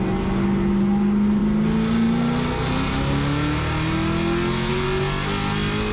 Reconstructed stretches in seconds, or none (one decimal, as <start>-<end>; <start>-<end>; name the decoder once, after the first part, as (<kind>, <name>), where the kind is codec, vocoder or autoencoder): none